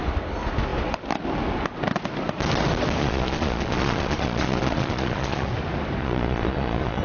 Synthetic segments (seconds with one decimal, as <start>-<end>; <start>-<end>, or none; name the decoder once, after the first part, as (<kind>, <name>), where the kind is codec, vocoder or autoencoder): 3.0-5.5 (vocoder, Vocos); 6.0-7.0